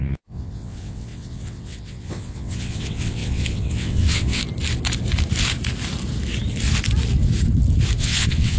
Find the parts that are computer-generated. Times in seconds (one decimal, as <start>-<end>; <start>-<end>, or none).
0.0-4.4; 8.0-8.6